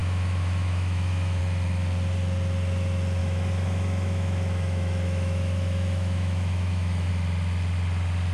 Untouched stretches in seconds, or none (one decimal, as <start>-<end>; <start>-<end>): 1.4-3.2; 7.1-8.3